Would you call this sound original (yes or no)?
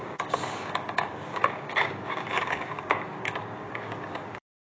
no